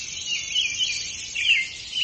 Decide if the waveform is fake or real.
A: real